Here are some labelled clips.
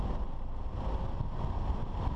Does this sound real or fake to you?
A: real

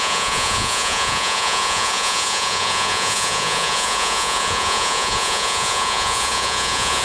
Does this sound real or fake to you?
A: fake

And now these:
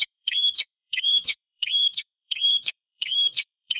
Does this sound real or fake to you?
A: fake